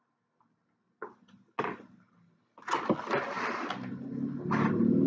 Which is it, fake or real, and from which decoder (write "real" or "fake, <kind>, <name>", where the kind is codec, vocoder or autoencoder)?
real